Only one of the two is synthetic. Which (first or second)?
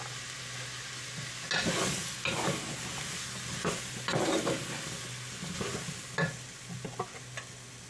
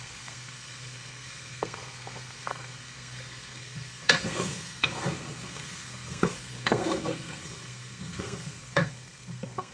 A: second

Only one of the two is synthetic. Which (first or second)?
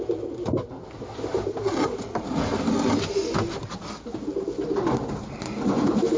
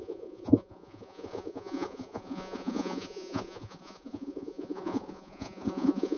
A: second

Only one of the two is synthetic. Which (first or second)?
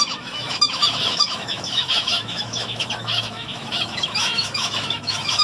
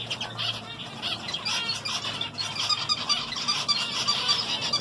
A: first